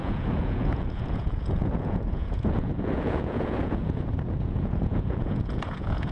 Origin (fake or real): fake